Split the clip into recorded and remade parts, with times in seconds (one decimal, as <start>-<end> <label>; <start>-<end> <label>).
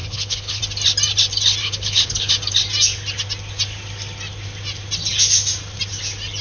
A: 0.0-0.6 remade; 0.6-1.6 recorded; 1.6-2.3 remade; 2.3-6.4 recorded